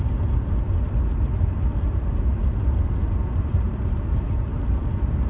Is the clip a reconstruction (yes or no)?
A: no